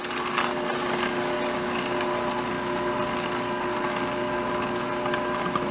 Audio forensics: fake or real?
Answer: real